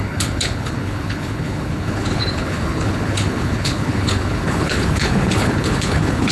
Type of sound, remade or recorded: remade